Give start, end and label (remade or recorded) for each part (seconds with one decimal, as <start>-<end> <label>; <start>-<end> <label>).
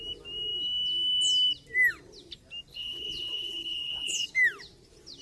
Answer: 0.0-2.7 recorded; 2.7-4.3 remade; 4.3-5.2 recorded